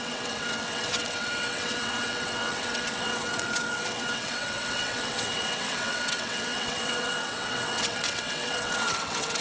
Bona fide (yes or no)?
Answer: no